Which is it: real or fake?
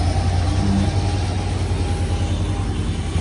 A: real